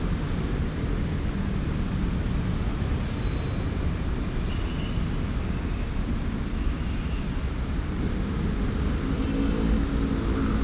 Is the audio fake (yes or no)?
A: no